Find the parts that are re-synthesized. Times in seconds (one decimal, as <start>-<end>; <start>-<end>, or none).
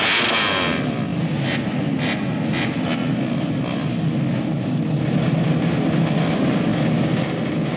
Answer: none